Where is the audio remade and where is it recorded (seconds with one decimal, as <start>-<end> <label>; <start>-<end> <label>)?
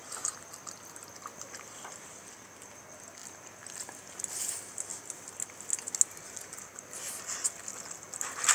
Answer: 0.0-1.3 recorded; 1.3-2.3 remade; 2.3-8.5 recorded